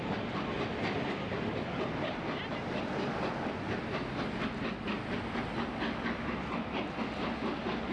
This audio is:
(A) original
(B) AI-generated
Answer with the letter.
A